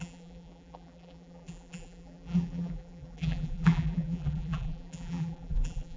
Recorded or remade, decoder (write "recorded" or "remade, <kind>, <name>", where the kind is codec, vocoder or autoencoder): remade, vocoder, BigVGAN v2